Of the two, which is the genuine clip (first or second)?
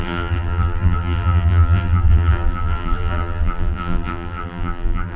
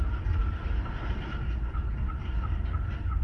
second